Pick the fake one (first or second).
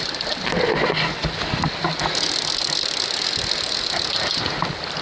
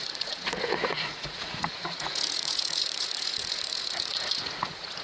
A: second